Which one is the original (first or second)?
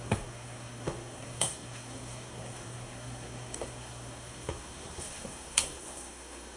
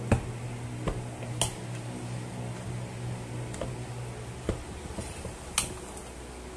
second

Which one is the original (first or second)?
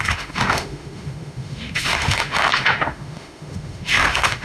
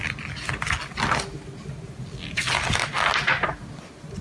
second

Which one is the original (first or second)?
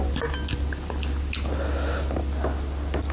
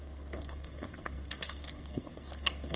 first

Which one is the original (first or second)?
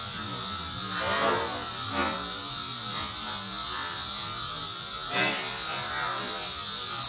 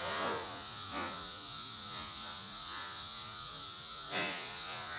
first